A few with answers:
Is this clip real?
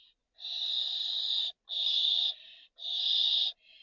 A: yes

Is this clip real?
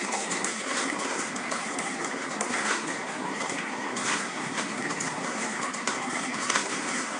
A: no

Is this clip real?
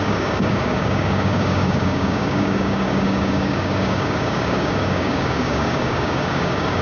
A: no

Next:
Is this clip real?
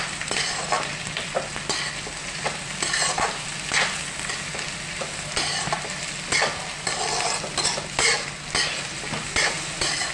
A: yes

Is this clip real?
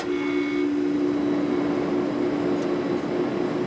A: yes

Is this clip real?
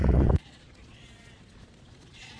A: no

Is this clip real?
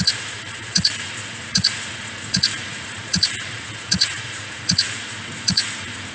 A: no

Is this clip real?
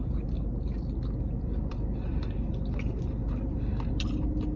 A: yes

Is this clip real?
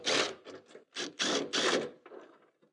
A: yes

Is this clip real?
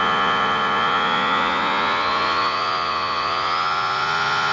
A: no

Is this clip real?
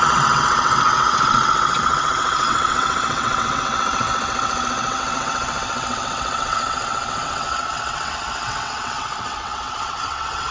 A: no